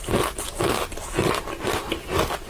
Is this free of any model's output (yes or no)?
yes